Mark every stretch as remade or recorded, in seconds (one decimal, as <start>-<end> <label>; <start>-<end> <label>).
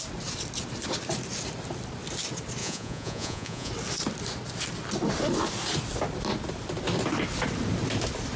0.0-2.6 recorded; 2.6-3.7 remade; 3.7-8.4 recorded